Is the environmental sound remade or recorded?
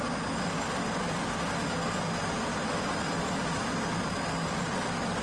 recorded